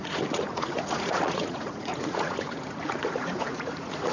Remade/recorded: remade